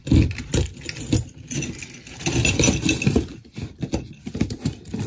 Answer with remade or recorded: recorded